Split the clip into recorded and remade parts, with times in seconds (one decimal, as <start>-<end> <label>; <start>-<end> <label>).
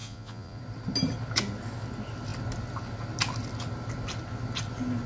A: 0.0-0.6 remade; 0.6-5.1 recorded